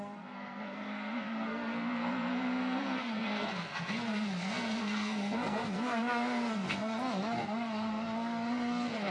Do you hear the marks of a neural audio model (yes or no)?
yes